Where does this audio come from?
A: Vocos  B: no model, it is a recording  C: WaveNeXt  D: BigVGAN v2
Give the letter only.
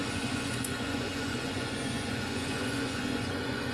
A